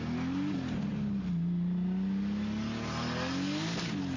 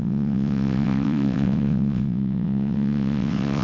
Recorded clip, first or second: first